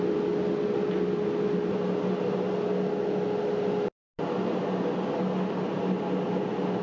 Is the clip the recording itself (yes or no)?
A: yes